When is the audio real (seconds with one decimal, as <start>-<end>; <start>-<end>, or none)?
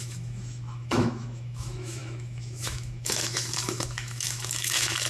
none